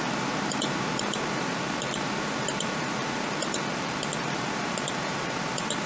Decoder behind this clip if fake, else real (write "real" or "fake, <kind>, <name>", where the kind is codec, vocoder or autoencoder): fake, vocoder, BigVGAN v2